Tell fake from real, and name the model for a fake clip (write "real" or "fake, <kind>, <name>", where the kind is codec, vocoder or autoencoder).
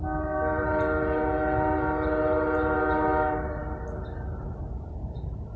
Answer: real